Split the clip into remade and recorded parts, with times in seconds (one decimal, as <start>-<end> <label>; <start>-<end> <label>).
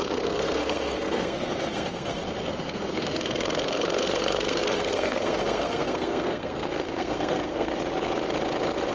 0.0-7.7 remade; 7.7-8.9 recorded